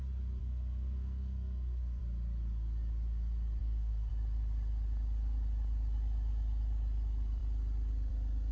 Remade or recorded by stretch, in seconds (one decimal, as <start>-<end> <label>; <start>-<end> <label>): 0.0-0.4 recorded; 0.4-2.0 remade; 2.0-3.6 recorded; 3.6-4.1 remade; 4.1-8.5 recorded